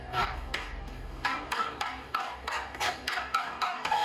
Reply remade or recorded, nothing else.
remade